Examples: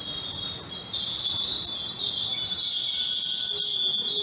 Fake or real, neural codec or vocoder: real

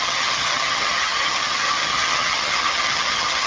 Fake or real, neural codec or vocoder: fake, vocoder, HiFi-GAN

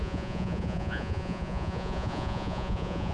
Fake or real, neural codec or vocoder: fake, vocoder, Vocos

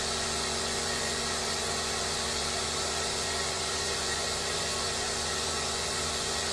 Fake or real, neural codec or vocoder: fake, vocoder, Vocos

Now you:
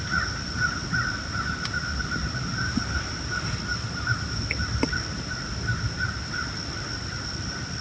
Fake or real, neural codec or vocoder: real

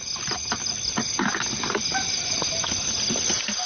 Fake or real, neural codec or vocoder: real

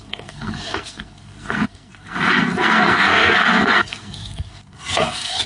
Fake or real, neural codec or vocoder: fake, codec, SNAC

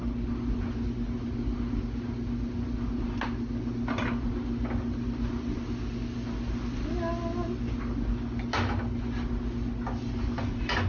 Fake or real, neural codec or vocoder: real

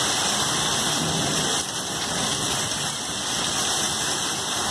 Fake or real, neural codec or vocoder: fake, vocoder, BigVGAN v2